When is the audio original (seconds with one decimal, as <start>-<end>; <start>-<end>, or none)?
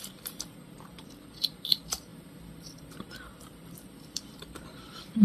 none